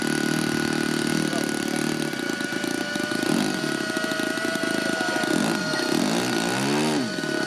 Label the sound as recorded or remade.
recorded